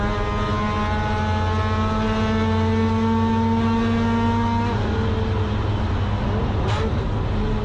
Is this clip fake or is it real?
real